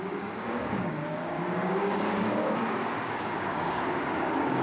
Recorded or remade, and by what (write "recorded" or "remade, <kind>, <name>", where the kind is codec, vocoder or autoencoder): remade, codec, DAC